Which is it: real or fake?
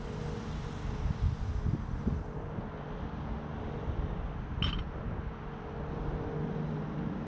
real